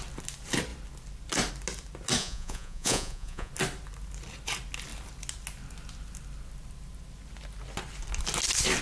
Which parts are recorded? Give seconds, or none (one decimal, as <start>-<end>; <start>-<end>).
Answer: 0.0-2.2; 3.5-8.8